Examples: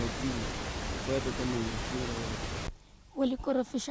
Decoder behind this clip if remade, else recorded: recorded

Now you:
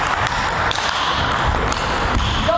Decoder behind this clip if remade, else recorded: recorded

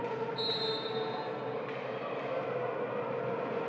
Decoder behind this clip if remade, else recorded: recorded